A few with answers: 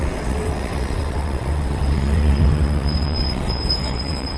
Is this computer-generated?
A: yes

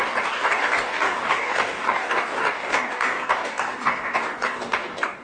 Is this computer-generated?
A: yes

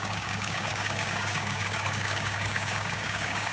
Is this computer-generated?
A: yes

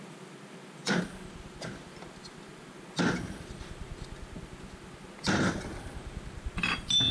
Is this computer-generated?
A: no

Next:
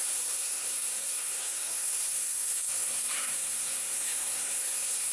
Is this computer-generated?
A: yes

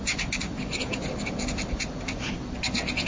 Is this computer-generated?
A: no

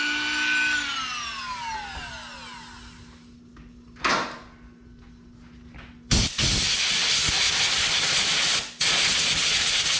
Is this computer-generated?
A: no